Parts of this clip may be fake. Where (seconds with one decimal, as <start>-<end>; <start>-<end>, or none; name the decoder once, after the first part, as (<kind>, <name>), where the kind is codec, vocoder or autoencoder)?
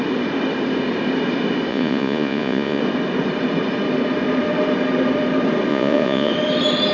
1.7-2.8 (vocoder, Vocos); 5.7-6.3